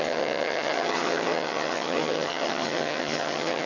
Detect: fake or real fake